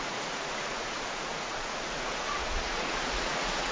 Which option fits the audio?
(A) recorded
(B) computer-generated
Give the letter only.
B